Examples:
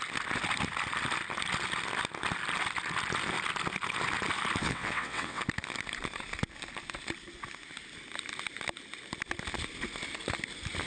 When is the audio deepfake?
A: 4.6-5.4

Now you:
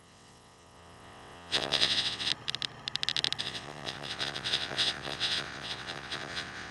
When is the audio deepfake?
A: 0.0-2.3; 3.4-6.7

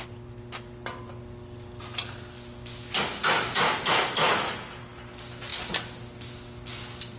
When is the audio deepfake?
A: none

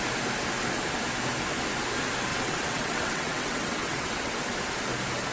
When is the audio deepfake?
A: 2.3-4.3

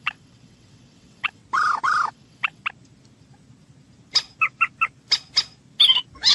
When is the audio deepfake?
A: 0.0-1.4; 2.1-2.6

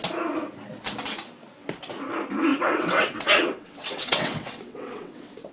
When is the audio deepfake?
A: 2.5-5.5

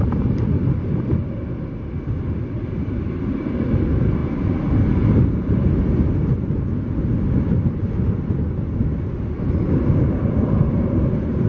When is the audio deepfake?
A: none